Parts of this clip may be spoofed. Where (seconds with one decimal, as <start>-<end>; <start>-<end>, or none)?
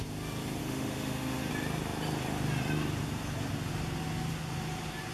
0.6-1.5